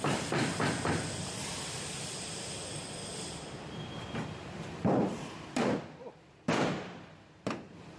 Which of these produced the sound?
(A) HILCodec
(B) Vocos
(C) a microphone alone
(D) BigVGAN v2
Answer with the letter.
D